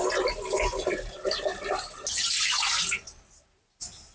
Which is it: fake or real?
real